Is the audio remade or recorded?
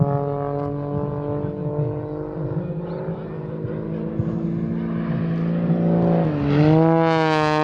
recorded